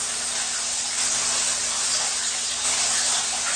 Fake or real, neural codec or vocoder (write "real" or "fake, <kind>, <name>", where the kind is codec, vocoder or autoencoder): real